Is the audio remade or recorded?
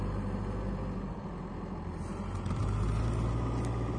recorded